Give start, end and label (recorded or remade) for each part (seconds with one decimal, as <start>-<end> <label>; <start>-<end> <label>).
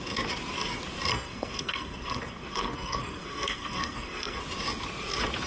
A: 0.0-1.1 recorded; 1.1-4.4 remade; 4.4-5.5 recorded